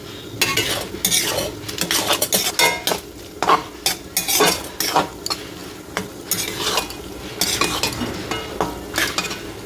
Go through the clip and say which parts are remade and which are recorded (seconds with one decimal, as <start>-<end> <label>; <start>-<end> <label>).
0.0-9.7 recorded